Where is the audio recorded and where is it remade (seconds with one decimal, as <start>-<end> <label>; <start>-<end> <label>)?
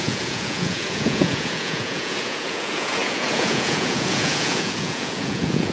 0.0-5.7 remade